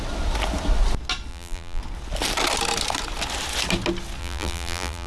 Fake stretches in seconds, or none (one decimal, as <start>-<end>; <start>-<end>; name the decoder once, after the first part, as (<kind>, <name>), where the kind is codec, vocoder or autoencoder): 1.3-1.8 (vocoder, BigVGAN v2); 4.2-5.1